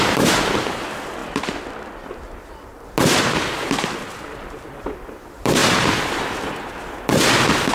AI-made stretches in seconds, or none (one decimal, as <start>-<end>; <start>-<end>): 0.0-1.2; 3.2-5.6